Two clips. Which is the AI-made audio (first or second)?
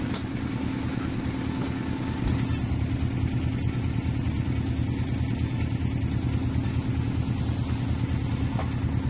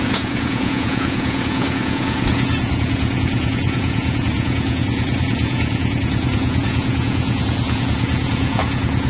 second